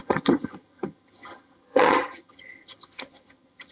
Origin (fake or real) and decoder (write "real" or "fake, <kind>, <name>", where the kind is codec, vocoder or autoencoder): fake, vocoder, HiFi-GAN